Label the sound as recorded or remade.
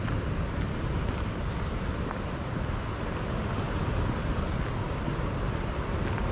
recorded